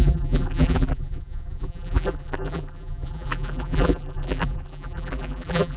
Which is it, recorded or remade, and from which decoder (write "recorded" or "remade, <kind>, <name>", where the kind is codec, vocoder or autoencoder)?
remade, vocoder, BigVGAN v2